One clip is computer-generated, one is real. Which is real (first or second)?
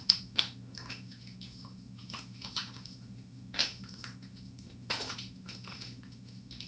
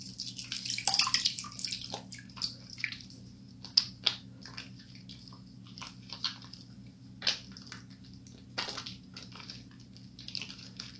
second